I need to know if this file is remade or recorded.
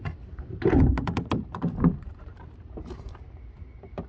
remade